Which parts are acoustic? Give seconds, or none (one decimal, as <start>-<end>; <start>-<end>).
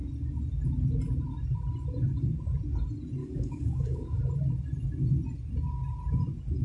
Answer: 0.0-3.2; 4.2-6.6